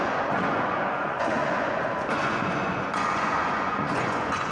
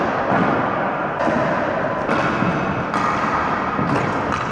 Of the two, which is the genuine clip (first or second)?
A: second